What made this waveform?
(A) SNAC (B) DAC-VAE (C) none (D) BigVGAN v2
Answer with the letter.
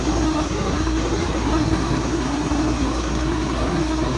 A